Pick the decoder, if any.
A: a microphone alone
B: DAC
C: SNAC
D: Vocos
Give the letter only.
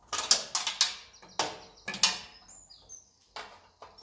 A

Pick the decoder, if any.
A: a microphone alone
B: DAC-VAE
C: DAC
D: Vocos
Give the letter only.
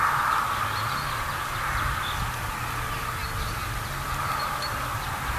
A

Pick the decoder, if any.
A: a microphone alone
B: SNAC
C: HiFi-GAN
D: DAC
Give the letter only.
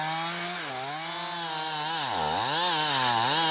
A